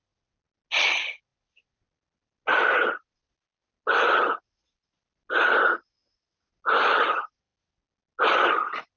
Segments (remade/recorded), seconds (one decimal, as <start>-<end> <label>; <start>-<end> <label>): 0.0-9.0 recorded